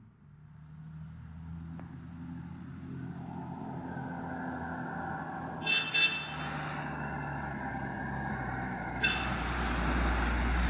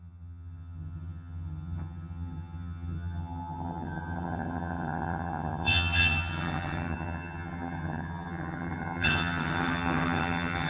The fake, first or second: second